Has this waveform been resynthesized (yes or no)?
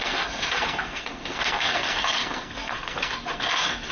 yes